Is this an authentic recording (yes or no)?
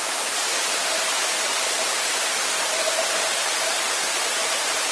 no